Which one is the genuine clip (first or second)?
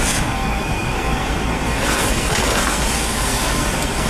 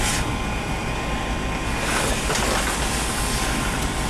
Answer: second